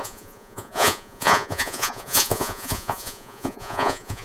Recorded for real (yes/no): no